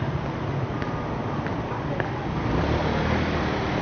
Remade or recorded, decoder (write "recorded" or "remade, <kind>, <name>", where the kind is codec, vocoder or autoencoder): recorded